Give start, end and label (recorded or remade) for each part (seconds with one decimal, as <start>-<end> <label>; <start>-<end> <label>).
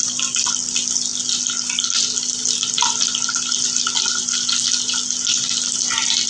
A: 0.0-6.3 recorded